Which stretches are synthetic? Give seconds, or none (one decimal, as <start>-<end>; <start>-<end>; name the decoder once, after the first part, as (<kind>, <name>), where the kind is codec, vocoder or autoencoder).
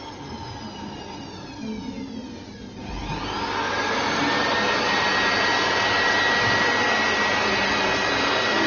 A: none